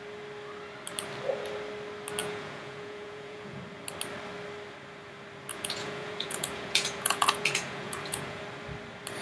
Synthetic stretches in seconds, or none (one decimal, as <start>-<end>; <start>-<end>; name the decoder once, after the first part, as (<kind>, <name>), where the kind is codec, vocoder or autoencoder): 2.2-3.6 (vocoder, Vocos); 5.5-8.4